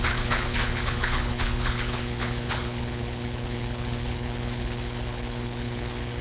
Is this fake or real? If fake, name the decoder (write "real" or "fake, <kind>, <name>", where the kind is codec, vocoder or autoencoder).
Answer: fake, codec, HILCodec